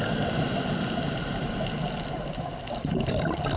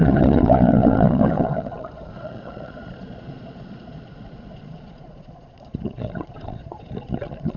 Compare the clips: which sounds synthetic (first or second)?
second